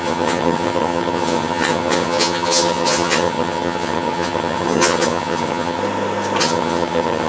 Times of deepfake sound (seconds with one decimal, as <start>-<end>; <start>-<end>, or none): 0.0-5.8; 6.4-7.3